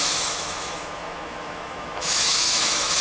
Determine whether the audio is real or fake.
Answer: fake